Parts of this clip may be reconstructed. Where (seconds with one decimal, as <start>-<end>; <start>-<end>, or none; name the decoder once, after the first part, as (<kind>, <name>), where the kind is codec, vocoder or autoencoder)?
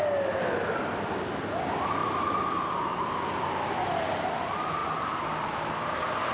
none